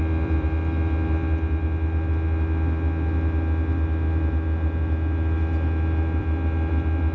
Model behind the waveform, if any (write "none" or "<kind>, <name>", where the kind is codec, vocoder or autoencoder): vocoder, BigVGAN v2